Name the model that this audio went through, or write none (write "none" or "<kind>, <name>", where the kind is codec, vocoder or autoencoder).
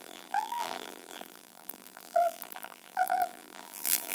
vocoder, BigVGAN v2